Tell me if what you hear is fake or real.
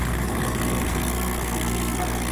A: fake